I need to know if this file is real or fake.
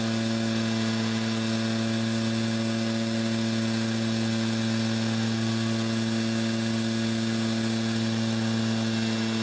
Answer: real